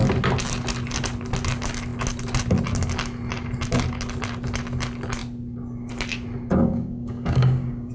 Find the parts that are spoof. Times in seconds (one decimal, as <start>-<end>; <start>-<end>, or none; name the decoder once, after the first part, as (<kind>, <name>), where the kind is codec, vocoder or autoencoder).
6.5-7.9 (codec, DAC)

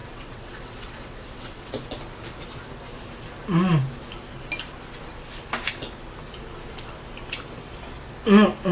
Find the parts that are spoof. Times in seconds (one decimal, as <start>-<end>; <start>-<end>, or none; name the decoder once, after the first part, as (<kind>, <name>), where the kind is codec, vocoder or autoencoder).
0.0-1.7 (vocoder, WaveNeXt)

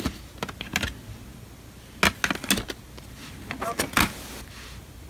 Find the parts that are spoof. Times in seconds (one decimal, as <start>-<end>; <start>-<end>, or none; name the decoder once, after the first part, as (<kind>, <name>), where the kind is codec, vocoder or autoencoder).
none

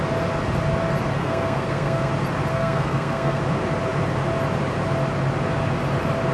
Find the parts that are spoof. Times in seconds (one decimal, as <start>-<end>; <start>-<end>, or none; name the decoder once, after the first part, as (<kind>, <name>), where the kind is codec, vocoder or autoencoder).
1.2-2.1 (codec, SNAC); 2.5-3.4

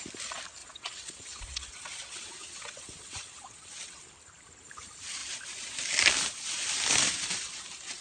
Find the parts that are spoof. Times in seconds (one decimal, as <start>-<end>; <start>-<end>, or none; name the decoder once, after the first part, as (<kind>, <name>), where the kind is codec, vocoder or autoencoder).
0.6-4.0 (vocoder, WaveNeXt)

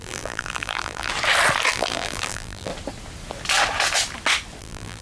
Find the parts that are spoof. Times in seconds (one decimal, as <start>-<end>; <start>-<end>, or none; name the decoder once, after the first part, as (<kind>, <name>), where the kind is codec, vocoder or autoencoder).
0.0-1.1 (vocoder, BigVGAN v2); 1.7-2.7; 4.6-5.0